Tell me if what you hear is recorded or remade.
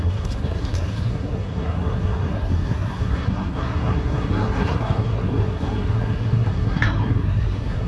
remade